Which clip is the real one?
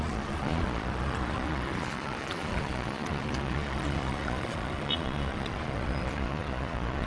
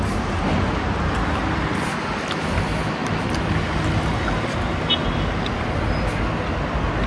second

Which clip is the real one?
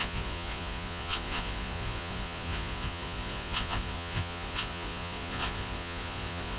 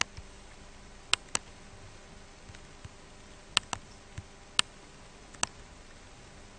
second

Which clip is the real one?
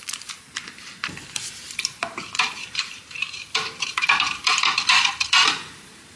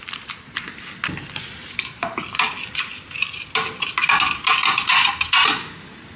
second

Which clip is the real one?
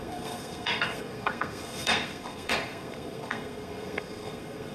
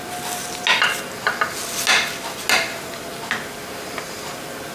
second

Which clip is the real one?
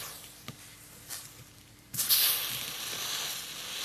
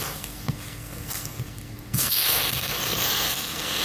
first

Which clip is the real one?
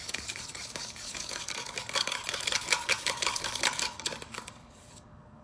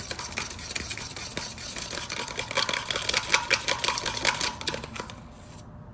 second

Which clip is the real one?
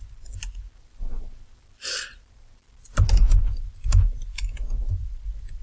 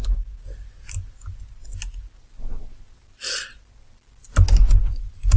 second